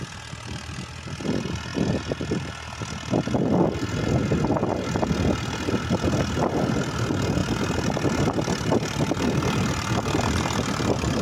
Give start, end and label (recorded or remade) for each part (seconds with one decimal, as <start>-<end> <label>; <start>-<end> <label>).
0.0-11.2 recorded